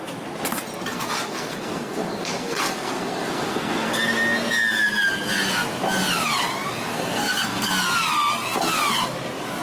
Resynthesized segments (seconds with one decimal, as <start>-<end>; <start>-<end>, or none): 0.9-3.9; 6.9-7.7